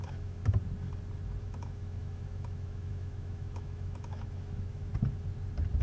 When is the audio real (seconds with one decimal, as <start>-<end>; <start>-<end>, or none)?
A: 0.4-1.4; 4.9-5.8